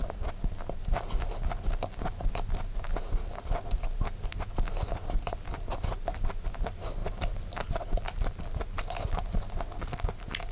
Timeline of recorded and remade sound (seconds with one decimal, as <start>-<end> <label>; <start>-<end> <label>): 0.0-10.5 recorded